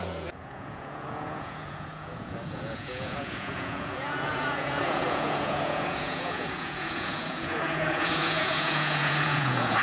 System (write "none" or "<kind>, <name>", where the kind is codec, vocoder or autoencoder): vocoder, Vocos